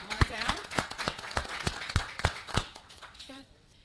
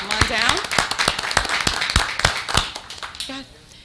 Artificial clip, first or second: first